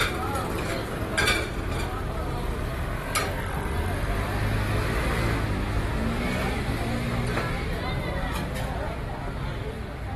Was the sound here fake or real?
real